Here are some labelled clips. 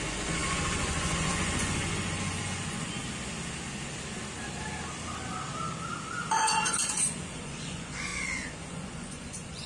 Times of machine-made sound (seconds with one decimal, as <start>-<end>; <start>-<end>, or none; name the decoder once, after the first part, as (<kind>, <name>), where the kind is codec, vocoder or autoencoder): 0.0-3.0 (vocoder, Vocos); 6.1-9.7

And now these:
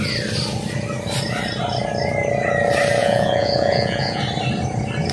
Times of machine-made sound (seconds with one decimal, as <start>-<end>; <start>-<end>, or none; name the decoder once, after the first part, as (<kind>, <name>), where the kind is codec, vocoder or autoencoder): 3.0-4.2 (vocoder, Vocos)

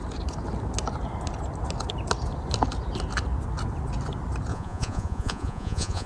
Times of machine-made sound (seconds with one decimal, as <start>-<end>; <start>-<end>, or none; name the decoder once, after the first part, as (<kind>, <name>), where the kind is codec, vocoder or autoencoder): 4.5-6.1 (vocoder, Vocos)

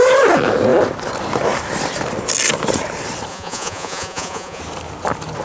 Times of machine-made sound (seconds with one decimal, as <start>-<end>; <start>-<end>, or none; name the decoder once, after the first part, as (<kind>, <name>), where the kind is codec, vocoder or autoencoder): 3.3-4.6 (vocoder, Vocos)

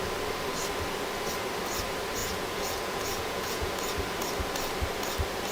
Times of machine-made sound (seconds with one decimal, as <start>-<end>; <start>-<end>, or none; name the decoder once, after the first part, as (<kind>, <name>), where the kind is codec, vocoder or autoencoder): 2.2-3.7 (vocoder, Vocos)

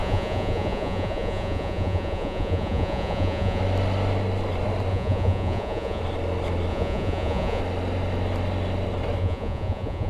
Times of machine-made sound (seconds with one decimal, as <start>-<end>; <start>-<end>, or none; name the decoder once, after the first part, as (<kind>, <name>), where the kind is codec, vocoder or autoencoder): 0.0-3.6 (vocoder, Vocos); 4.9-6.0; 6.7-7.6; 9.2-10.1

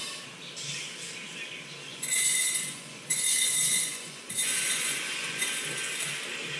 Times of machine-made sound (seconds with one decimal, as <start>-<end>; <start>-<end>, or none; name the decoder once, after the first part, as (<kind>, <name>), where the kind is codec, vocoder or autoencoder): 1.9-5.9 (vocoder, Vocos)

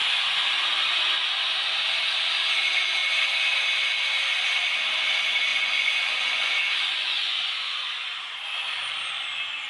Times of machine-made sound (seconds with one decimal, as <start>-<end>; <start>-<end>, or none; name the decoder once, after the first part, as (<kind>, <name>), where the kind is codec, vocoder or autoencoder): 5.5-6.5 (vocoder, Vocos); 6.9-8.0